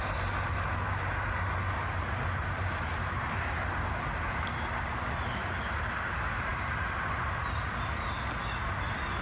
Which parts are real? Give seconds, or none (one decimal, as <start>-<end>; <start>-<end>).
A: 0.0-9.2